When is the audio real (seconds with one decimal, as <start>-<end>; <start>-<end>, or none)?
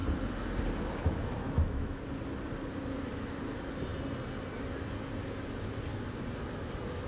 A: 0.0-1.0; 2.0-7.1